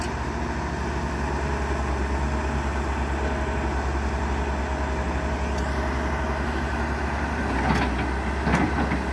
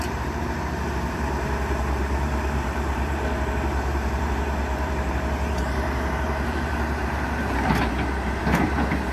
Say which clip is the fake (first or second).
second